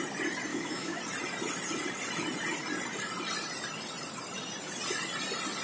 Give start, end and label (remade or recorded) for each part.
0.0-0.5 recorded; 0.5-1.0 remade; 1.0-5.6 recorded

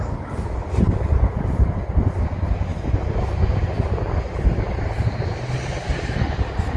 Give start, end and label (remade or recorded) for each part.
0.0-2.7 recorded; 2.7-3.2 remade; 3.2-6.8 recorded

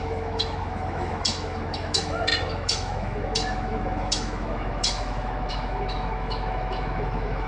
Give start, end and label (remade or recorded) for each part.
0.0-7.5 remade

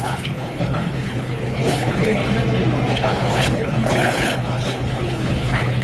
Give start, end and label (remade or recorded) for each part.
0.0-2.2 remade; 2.2-2.9 recorded; 2.9-5.8 remade

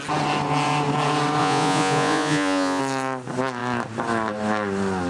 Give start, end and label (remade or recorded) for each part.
0.0-1.4 recorded; 1.4-2.8 remade; 2.8-5.1 recorded

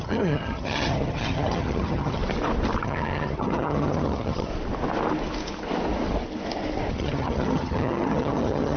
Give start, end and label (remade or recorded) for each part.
0.0-2.2 remade; 2.2-2.8 recorded; 2.8-4.5 remade; 4.5-6.9 recorded; 6.9-8.8 remade

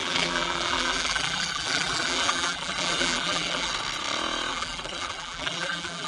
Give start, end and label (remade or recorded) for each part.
0.0-3.7 remade; 3.7-4.5 recorded; 4.5-6.1 remade

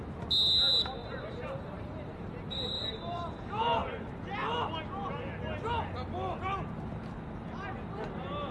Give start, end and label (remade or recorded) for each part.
0.0-1.0 recorded; 1.0-3.0 remade; 3.0-8.5 recorded